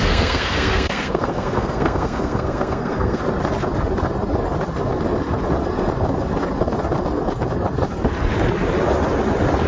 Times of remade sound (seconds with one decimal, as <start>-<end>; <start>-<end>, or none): 0.0-3.2